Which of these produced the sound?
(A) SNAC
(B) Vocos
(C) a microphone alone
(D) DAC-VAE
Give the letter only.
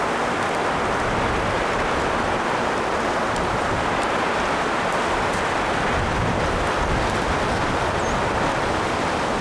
C